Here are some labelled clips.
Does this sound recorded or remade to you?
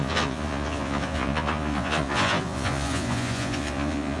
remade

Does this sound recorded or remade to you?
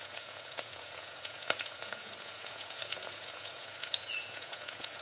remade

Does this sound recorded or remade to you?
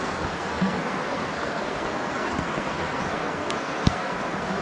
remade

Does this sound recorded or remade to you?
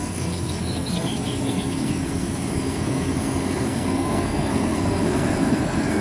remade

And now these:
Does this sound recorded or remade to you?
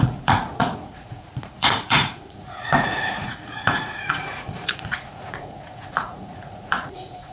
remade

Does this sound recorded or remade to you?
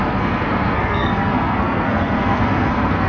remade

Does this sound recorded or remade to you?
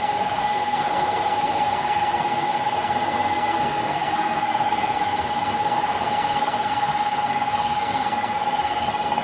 remade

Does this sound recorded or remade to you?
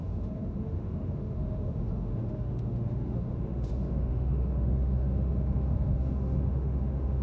remade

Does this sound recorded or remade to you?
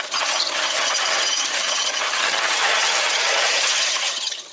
remade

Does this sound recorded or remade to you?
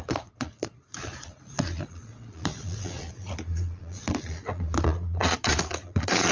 remade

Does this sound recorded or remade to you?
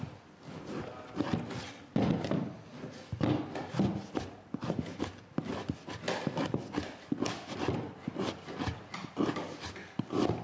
recorded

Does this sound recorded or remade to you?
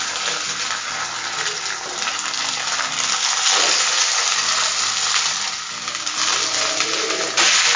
recorded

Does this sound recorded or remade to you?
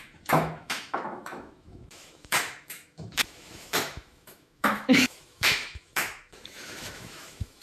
remade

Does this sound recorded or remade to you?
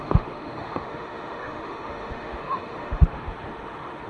remade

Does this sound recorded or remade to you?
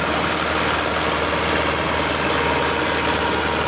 recorded